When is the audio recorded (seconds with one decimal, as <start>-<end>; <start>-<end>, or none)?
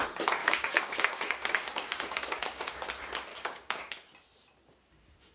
0.0-0.4; 2.9-3.3; 3.9-5.3